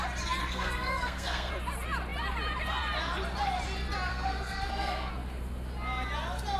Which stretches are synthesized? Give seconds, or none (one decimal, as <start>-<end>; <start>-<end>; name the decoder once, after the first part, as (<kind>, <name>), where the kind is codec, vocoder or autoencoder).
0.4-1.5 (codec, SNAC); 4.1-5.1